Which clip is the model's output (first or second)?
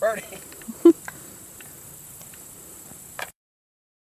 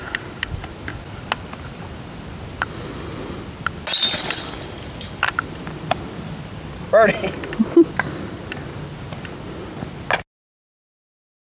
first